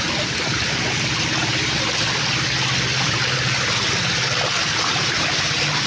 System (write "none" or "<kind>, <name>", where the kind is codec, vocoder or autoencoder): none